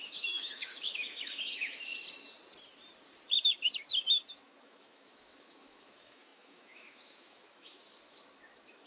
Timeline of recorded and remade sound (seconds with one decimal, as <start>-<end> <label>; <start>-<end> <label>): 0.0-1.9 remade; 1.9-4.3 recorded; 4.3-8.9 remade